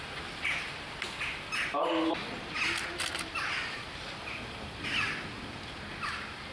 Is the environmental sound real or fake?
real